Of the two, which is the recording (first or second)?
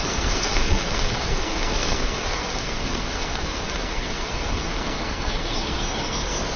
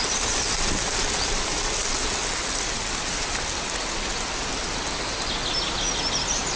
second